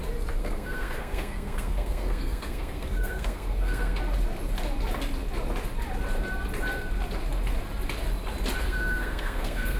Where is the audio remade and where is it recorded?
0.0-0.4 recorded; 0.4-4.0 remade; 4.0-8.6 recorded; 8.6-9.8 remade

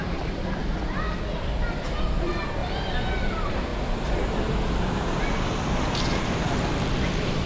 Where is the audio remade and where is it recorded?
0.0-0.6 remade; 0.6-1.8 recorded; 1.8-2.6 remade; 2.6-3.2 recorded; 3.2-3.7 remade; 3.7-6.2 recorded; 6.2-7.5 remade

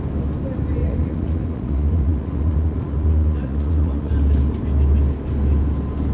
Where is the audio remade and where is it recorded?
0.0-0.8 recorded; 0.8-4.1 remade; 4.1-6.1 recorded

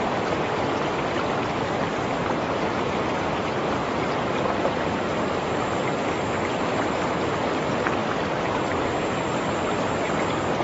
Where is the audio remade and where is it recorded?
0.0-3.8 recorded; 3.8-6.0 remade; 6.0-8.0 recorded; 8.0-8.9 remade; 8.9-10.6 recorded

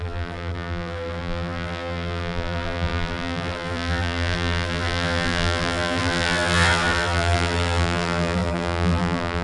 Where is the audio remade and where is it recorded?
0.0-9.4 remade